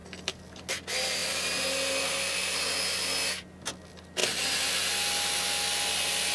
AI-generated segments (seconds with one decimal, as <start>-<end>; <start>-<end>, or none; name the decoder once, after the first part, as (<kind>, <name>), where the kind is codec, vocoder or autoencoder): 0.0-0.7 (vocoder, BigVGAN v2); 4.2-4.7